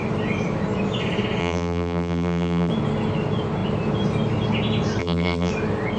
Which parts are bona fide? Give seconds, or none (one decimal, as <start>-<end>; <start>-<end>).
0.0-1.4; 2.7-5.0; 5.5-6.0